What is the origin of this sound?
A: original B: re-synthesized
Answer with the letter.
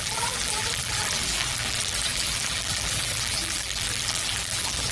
B